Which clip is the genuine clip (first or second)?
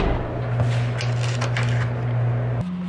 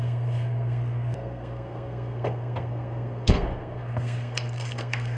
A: first